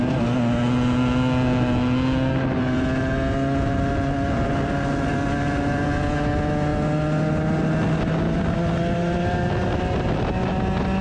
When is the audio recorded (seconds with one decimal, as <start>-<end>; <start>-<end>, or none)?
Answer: 0.0-11.0